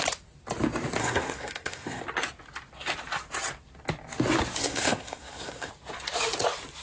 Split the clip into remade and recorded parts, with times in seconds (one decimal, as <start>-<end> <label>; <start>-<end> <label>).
0.0-1.0 recorded; 1.0-2.0 remade; 2.0-4.6 recorded; 4.6-5.7 remade; 5.7-6.8 recorded